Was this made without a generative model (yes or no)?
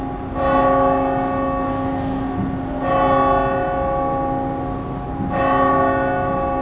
yes